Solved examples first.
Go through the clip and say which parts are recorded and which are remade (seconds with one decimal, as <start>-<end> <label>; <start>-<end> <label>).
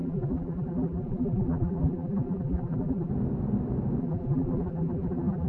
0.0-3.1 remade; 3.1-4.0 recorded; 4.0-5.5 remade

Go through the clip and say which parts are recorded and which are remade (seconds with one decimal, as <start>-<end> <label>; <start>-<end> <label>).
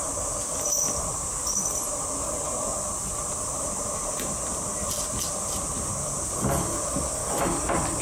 0.0-8.0 recorded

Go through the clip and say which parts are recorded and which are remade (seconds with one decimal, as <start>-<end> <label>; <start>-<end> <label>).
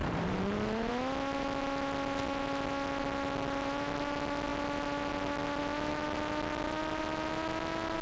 0.0-0.9 remade; 0.9-8.0 recorded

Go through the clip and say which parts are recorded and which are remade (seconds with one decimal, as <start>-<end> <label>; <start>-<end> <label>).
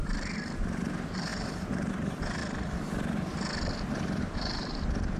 0.0-0.8 recorded; 0.8-2.4 remade; 2.4-4.2 recorded; 4.2-5.2 remade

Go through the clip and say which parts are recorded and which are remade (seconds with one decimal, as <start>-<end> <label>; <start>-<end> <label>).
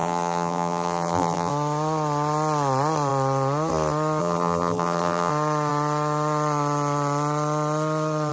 0.0-1.5 remade; 1.5-4.2 recorded; 4.2-5.3 remade; 5.3-8.3 recorded